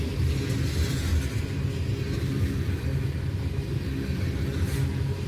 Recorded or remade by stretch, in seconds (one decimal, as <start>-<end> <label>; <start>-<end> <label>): 0.0-5.3 recorded